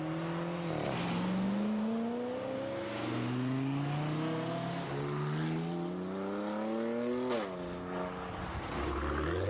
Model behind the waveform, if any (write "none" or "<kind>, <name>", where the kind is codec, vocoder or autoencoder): none